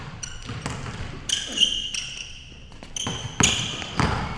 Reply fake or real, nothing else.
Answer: real